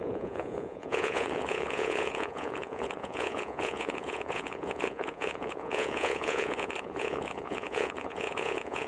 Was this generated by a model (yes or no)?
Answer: yes